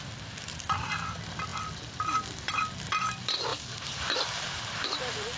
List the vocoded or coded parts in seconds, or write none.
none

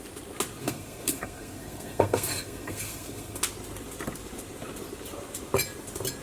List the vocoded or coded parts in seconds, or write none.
0.6-3.4 (codec, SNAC)